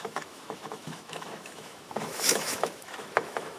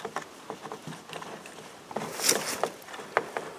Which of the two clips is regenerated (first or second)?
first